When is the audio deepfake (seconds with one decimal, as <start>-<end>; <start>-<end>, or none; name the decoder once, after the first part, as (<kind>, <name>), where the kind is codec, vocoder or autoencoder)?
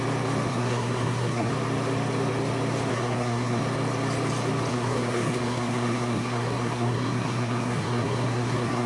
0.5-1.5 (codec, SNAC); 2.9-3.6; 4.7-8.9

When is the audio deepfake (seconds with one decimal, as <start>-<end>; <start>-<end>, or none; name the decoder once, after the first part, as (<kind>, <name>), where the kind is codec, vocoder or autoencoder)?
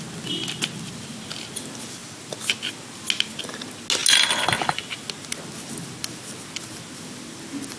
none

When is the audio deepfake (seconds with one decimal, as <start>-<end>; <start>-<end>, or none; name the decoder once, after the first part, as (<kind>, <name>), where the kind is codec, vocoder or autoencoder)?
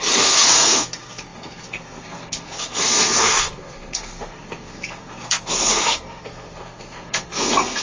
0.0-7.8 (codec, SNAC)